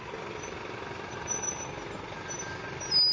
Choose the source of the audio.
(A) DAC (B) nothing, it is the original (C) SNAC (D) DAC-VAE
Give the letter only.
B